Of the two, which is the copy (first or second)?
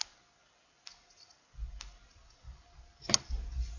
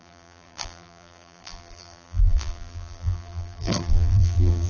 second